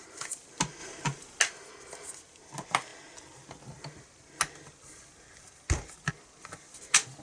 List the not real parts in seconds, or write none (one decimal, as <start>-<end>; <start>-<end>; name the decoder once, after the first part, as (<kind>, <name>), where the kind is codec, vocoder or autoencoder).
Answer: 0.8-1.4 (vocoder, BigVGAN v2)